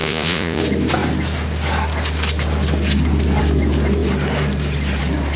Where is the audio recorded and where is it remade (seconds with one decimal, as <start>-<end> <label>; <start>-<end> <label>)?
0.0-0.6 remade; 0.6-5.4 recorded